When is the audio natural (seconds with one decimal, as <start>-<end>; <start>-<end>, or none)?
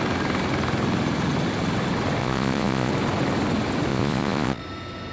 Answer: 0.0-2.2; 2.9-3.9; 4.6-5.1